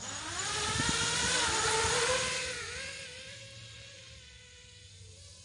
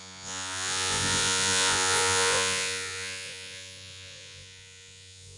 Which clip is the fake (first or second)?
second